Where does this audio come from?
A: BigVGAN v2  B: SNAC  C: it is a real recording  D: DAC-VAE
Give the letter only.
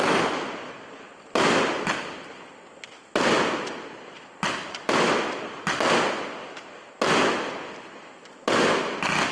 C